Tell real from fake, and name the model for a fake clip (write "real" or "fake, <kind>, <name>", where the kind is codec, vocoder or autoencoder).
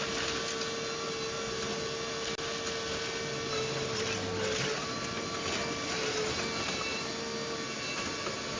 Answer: real